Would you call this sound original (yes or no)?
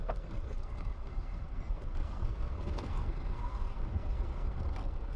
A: no